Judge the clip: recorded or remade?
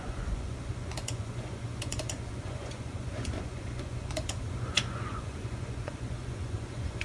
remade